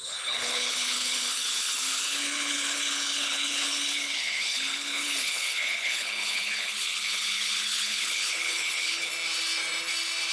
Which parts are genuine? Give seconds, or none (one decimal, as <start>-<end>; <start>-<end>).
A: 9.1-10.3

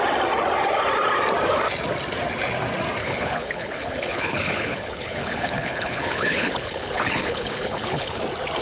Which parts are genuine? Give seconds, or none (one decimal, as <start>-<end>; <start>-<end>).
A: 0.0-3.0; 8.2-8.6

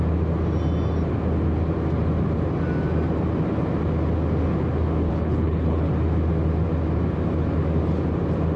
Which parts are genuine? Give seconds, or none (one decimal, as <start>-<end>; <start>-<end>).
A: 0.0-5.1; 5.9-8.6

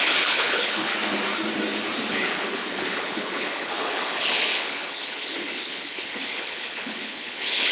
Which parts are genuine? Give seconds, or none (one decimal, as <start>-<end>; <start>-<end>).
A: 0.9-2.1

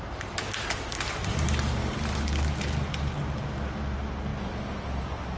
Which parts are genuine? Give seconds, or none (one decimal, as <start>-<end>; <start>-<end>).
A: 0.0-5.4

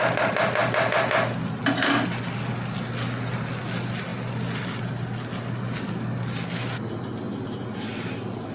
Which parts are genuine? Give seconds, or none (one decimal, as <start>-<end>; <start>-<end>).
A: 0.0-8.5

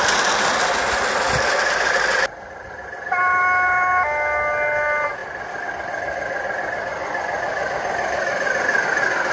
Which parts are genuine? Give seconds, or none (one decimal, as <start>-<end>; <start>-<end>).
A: 0.0-9.3